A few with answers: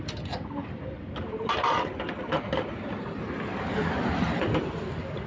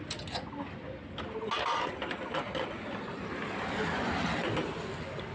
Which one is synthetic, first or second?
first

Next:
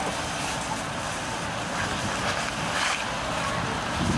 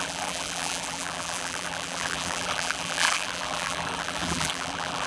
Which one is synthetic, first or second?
second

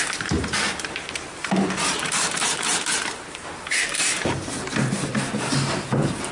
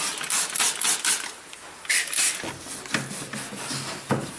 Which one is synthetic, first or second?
first